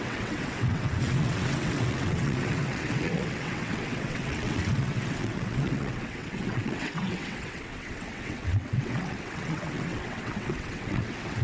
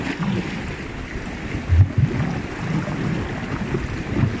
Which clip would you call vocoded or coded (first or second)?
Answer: first